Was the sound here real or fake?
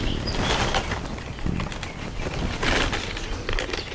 real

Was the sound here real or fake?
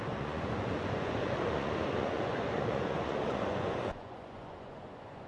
fake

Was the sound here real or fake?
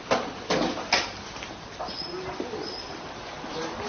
real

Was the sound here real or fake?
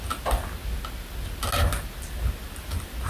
real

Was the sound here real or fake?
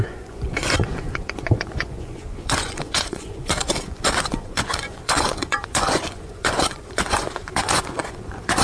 fake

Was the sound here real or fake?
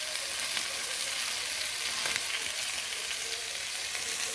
real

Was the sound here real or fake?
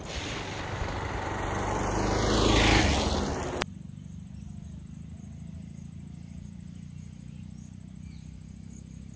real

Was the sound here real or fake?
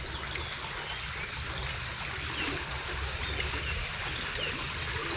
real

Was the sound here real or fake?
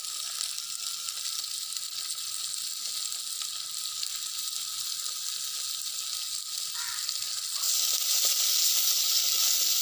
real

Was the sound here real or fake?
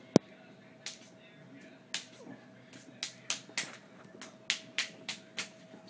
real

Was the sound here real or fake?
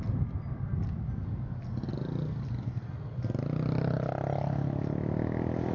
real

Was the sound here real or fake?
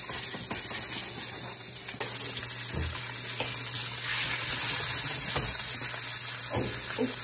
real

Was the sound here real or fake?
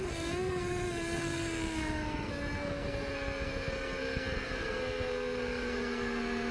fake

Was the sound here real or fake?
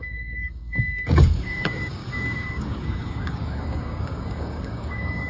fake